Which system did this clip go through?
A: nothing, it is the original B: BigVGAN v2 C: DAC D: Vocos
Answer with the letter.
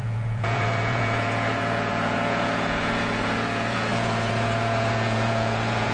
D